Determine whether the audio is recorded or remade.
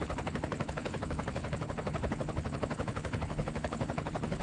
remade